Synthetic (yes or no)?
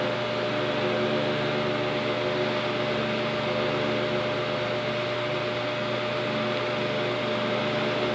no